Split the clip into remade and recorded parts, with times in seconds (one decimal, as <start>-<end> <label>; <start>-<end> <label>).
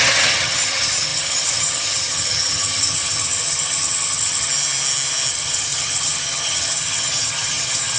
0.0-4.5 remade; 4.5-5.3 recorded; 5.3-8.0 remade